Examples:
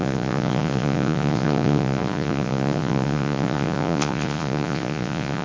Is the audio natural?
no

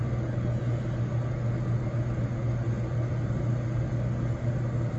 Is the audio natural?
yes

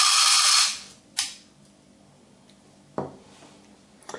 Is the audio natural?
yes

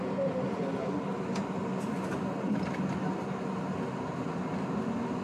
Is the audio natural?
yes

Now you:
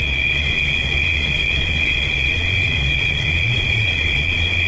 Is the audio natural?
no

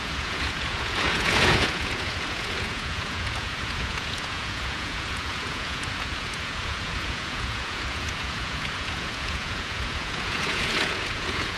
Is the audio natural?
no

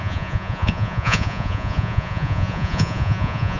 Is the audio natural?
no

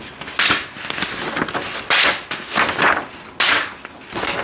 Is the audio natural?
yes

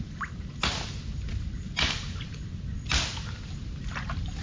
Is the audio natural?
yes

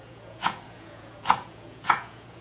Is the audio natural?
no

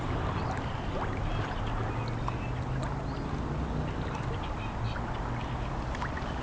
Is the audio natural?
yes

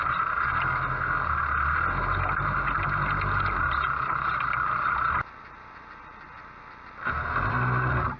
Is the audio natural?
yes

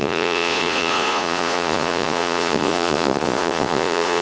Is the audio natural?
no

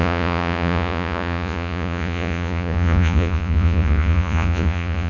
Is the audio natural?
no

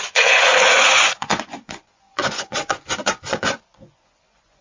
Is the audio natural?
no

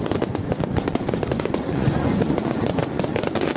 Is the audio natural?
no